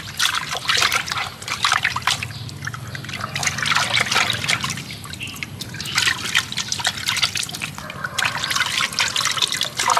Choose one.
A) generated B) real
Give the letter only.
B